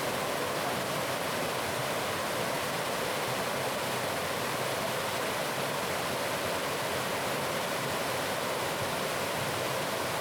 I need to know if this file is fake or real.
real